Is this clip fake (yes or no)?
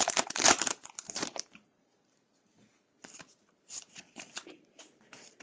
yes